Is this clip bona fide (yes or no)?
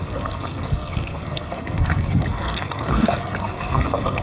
no